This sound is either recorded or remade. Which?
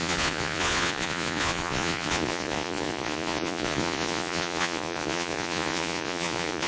remade